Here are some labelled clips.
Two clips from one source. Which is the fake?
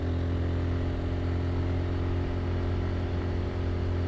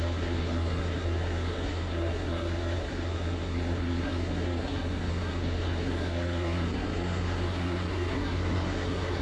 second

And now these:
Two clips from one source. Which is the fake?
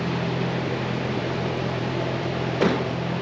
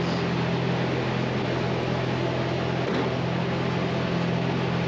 first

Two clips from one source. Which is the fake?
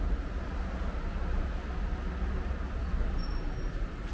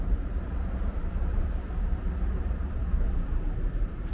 second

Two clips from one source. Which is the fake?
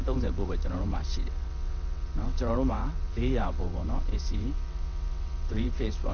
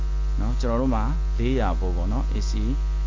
first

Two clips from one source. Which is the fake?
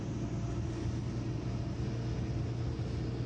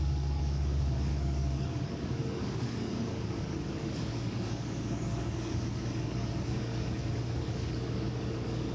second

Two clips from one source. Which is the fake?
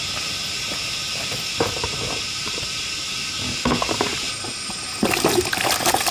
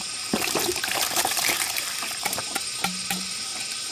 second